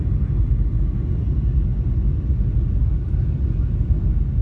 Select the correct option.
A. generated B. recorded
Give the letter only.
B